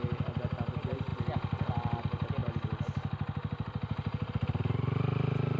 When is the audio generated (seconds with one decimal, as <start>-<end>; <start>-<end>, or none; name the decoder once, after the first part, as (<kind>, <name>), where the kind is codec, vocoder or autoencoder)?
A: none